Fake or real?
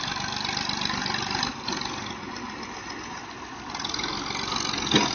real